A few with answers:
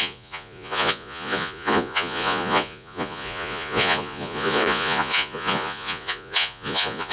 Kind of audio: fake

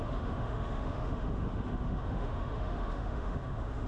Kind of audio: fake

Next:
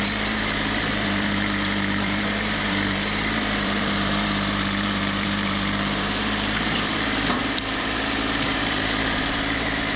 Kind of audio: fake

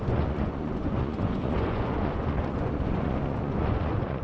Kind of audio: fake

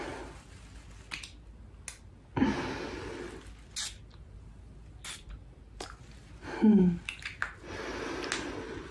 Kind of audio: real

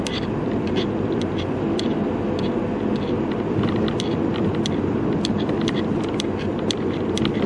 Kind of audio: real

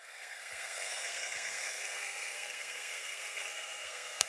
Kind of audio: fake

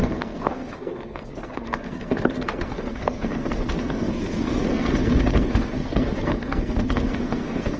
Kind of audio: fake